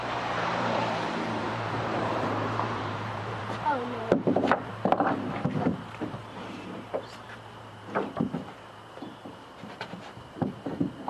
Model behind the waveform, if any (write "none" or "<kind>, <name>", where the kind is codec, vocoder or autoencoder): vocoder, BigVGAN v2